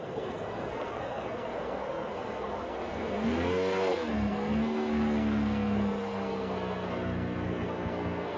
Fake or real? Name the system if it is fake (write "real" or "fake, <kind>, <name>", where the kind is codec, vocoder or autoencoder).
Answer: fake, codec, SNAC